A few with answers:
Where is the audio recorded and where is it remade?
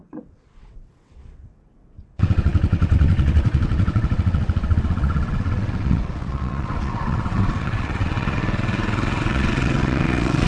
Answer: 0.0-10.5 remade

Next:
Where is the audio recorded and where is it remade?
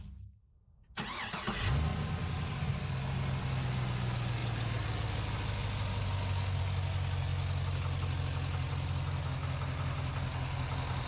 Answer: 0.0-11.1 recorded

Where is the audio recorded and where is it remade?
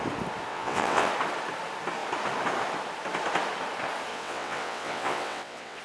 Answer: 0.0-0.5 recorded; 0.5-1.1 remade; 1.1-4.1 recorded; 4.1-5.8 remade